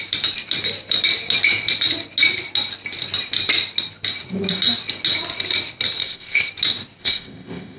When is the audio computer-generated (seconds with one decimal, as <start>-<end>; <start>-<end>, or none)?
6.0-6.5; 7.0-7.8